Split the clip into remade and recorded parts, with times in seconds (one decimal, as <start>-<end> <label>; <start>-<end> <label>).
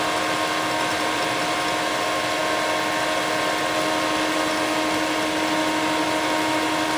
0.0-0.9 recorded; 0.9-1.6 remade; 1.6-7.0 recorded